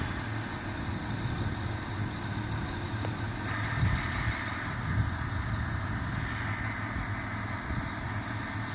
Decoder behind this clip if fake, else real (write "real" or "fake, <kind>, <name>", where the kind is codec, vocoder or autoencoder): real